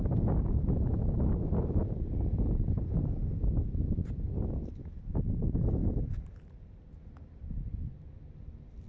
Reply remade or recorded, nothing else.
recorded